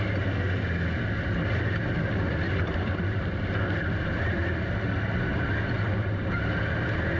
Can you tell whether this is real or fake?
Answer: real